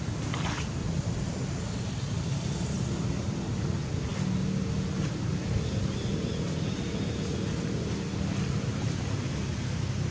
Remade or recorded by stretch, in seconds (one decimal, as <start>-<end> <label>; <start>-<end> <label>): 0.0-10.1 recorded